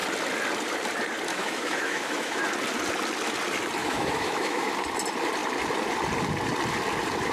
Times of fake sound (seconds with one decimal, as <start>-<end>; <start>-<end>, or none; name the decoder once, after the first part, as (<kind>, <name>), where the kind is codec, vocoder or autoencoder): 1.3-2.4 (autoencoder, DAC-VAE); 3.8-4.7